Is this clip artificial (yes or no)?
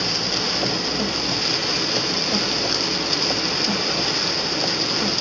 no